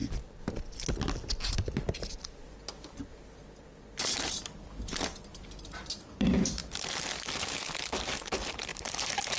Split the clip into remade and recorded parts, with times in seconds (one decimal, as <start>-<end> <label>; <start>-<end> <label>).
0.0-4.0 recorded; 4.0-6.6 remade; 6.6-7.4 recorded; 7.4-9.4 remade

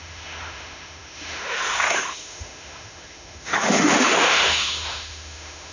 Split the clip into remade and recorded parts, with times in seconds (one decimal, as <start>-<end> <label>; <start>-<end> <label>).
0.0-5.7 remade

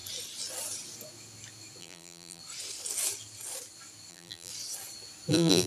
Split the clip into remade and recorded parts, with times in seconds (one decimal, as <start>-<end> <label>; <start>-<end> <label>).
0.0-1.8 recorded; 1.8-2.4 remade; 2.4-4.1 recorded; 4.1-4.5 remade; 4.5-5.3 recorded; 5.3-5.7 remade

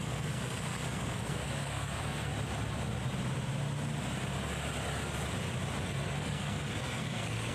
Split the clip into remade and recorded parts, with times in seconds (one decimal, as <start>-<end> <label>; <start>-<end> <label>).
0.0-2.3 remade; 2.3-5.8 recorded; 5.8-7.5 remade